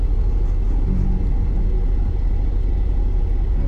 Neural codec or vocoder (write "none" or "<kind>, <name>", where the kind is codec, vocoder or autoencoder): none